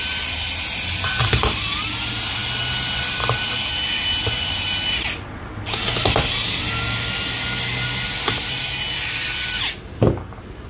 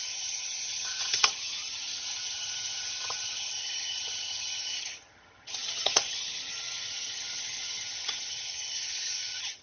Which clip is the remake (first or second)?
second